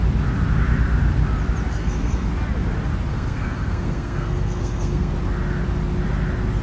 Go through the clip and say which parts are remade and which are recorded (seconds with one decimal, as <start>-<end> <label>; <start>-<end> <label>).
0.0-1.7 recorded; 1.7-2.3 remade; 2.3-3.1 recorded; 3.1-5.1 remade; 5.1-6.6 recorded